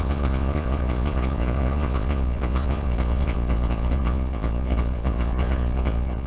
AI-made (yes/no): yes